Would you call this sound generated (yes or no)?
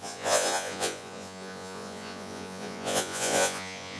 yes